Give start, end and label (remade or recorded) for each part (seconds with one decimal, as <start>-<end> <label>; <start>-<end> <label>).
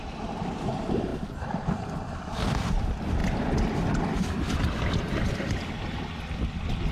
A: 0.0-1.1 remade; 1.1-2.2 recorded; 2.2-6.9 remade